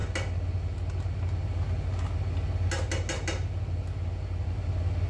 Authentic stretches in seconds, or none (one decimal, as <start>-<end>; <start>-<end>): 0.0-5.1